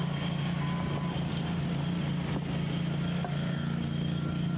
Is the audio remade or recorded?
recorded